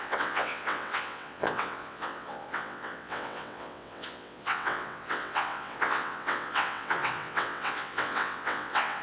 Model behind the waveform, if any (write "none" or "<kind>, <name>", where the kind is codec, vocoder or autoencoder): vocoder, WaveNeXt